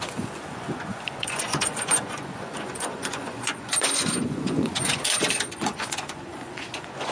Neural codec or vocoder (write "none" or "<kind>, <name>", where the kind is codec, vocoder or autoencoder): vocoder, Vocos